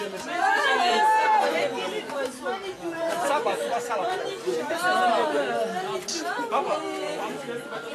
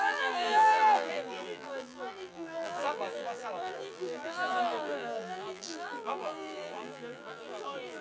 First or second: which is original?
first